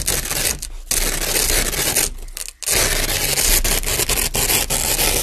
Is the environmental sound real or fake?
real